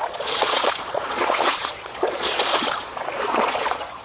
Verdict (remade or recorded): remade